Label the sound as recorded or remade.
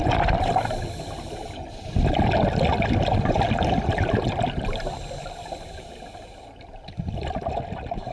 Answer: recorded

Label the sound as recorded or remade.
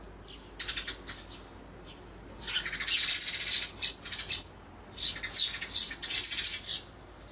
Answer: recorded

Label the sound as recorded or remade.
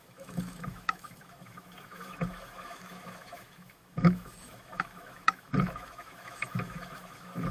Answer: remade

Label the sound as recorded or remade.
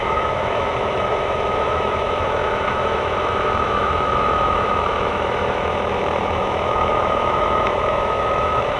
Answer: remade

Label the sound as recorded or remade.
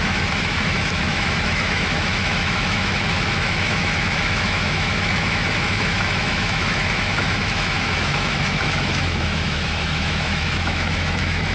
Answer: remade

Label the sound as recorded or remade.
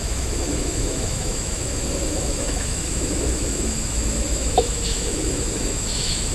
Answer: remade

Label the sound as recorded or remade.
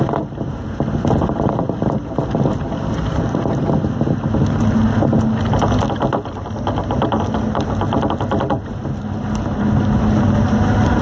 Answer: recorded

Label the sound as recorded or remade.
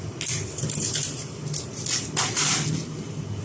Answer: recorded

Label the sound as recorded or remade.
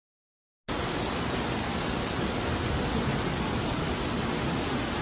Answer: recorded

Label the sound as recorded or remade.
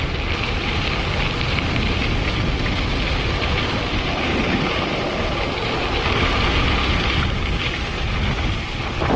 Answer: recorded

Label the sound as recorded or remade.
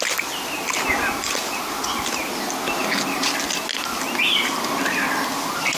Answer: recorded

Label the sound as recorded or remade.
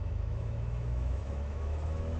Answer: remade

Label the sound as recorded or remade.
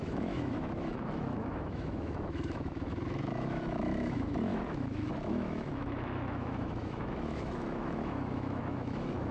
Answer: remade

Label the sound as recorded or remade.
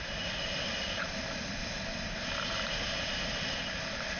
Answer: recorded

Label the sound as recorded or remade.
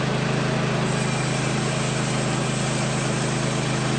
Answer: recorded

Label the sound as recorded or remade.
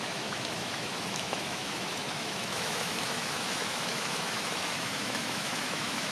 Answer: remade